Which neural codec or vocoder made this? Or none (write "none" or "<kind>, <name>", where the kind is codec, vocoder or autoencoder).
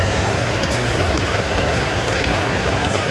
codec, SNAC